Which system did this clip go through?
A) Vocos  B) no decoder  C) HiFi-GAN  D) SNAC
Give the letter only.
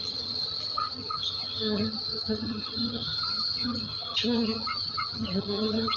C